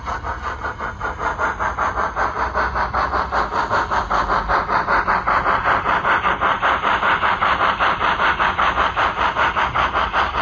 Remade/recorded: recorded